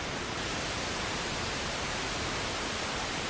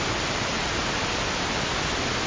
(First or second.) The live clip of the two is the second